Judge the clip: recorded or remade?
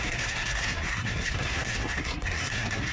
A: remade